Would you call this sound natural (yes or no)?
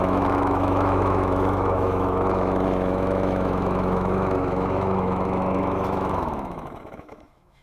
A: no